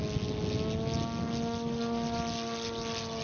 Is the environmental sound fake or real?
real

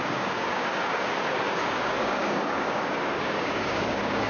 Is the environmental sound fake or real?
fake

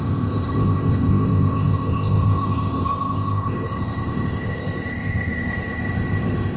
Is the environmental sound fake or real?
fake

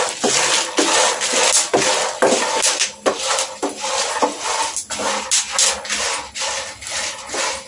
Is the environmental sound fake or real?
real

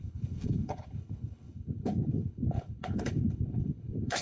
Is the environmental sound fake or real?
fake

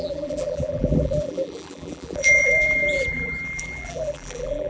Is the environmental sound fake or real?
fake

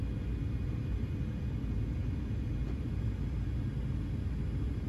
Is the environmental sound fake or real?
real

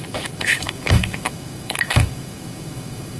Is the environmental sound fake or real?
fake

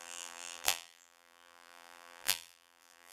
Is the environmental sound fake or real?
fake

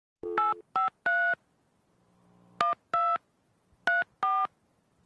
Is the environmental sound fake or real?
real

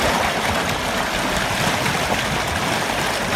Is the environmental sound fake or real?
real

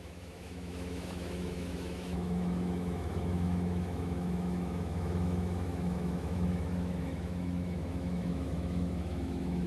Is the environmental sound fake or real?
fake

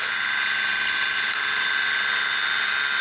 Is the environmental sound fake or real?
real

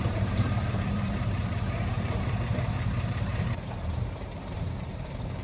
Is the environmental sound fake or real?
fake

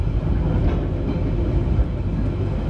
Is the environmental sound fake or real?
real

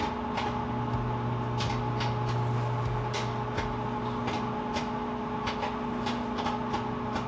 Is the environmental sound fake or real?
real